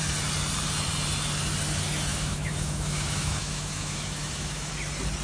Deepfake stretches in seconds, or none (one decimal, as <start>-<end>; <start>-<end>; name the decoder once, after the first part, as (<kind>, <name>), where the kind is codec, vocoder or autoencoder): 2.1-4.7 (autoencoder, DAC-VAE)